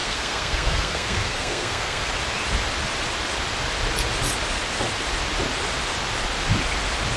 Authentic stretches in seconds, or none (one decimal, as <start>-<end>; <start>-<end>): 2.1-7.2